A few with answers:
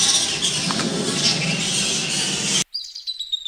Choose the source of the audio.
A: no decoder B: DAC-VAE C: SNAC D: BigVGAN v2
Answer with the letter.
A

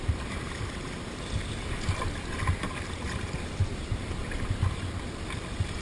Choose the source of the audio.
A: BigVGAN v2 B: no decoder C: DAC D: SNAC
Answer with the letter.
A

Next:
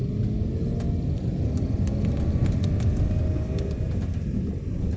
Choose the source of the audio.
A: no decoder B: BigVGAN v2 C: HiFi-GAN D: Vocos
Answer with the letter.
A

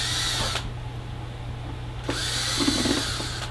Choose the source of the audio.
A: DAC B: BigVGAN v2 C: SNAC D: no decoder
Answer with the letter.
D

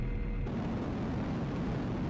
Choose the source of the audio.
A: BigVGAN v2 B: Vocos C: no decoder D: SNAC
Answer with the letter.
C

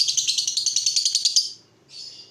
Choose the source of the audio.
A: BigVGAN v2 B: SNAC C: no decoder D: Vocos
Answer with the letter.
C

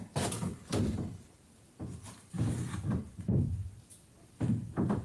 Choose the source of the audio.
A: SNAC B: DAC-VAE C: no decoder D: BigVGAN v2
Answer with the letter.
D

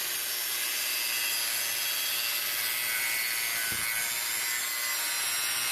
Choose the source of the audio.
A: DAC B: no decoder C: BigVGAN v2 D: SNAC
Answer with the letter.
B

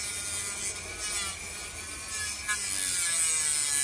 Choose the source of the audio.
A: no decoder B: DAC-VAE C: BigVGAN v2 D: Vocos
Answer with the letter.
A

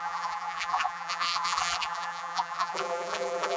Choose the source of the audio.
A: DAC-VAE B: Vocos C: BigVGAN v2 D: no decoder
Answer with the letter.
C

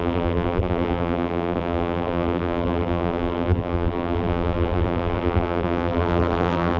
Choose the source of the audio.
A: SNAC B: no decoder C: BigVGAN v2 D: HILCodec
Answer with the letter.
C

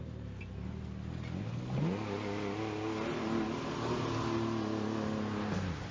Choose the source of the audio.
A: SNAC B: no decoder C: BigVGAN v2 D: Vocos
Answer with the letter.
B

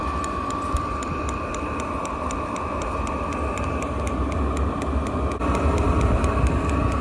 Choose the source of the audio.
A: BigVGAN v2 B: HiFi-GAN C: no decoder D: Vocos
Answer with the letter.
C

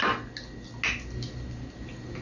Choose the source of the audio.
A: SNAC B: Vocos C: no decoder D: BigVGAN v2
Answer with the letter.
C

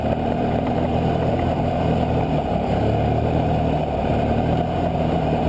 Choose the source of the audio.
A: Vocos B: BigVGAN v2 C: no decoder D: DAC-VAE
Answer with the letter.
B